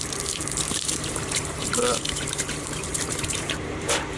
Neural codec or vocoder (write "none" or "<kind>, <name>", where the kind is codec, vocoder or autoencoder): vocoder, BigVGAN v2